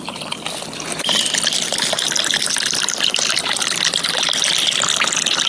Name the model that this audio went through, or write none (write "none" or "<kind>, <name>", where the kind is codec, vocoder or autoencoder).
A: none